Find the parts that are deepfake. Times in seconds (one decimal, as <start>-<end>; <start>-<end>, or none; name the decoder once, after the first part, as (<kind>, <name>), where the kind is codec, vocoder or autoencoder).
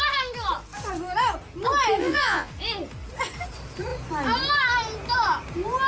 2.0-2.5 (vocoder, Vocos)